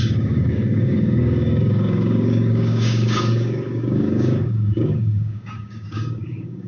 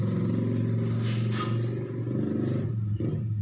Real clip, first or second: second